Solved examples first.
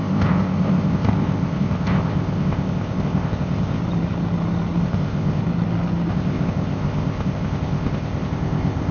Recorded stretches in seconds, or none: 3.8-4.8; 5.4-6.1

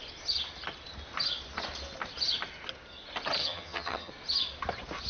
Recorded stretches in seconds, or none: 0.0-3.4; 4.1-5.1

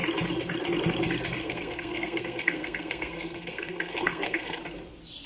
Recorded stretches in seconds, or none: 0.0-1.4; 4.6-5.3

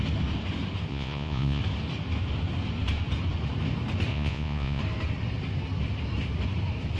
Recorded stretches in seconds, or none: 0.0-0.9; 1.6-4.1; 4.8-7.0

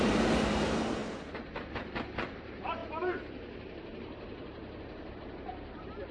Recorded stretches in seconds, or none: none

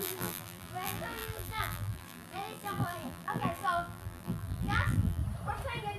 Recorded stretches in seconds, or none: 5.2-6.0

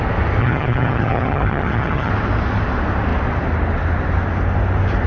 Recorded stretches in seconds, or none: 0.0-0.4; 2.1-5.1